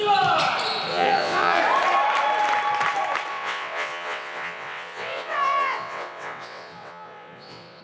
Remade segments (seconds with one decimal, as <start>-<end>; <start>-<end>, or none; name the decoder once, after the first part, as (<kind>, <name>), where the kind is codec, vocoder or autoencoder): 0.9-1.6 (vocoder, WaveNeXt); 3.3-7.8